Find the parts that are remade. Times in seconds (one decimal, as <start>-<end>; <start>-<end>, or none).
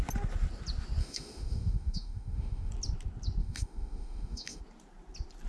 1.0-2.7; 3.4-4.6